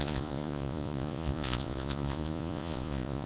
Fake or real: fake